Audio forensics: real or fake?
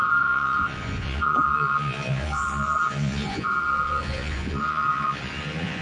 fake